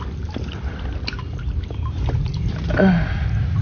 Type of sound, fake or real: real